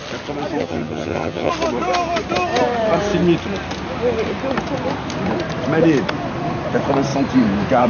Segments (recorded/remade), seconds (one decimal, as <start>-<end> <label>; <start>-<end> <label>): 0.0-0.6 recorded; 0.6-1.5 remade; 1.5-7.9 recorded